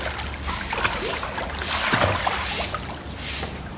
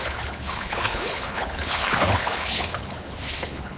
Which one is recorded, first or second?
first